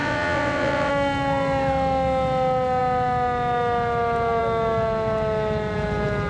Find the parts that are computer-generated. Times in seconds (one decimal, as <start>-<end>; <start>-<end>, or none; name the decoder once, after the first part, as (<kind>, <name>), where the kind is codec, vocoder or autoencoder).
0.0-0.9 (vocoder, WaveNeXt)